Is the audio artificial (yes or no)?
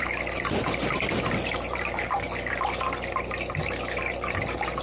no